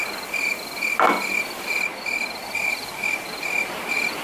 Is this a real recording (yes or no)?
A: yes